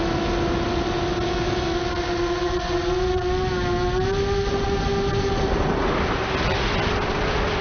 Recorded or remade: recorded